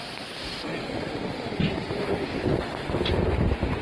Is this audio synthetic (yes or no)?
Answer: no